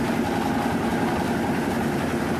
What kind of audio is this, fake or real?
real